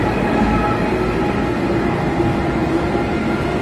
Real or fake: real